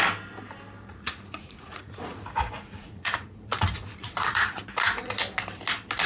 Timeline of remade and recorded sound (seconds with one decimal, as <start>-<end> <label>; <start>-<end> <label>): 0.0-0.9 recorded; 0.9-4.6 remade; 4.6-6.1 recorded